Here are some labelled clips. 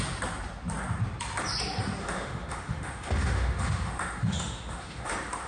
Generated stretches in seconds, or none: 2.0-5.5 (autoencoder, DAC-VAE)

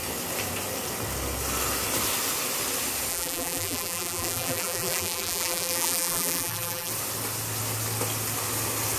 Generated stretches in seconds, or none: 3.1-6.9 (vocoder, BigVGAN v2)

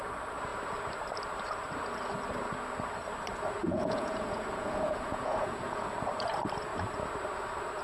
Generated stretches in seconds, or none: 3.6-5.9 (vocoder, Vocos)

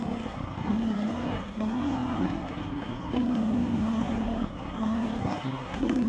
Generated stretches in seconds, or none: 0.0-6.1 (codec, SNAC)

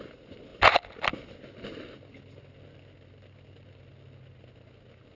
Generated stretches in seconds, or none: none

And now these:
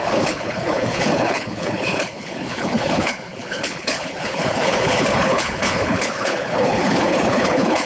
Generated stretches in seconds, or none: 0.0-7.9 (codec, HILCodec)

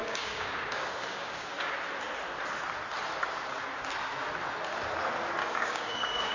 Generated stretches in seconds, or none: 0.0-1.7 (codec, DAC); 5.4-6.3

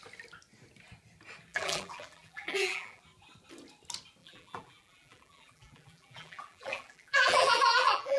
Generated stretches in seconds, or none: 1.5-3.0 (vocoder, BigVGAN v2); 4.2-8.2